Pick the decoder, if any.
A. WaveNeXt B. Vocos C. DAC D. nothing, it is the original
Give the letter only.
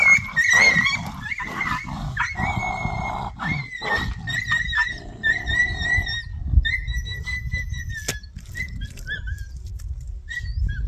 D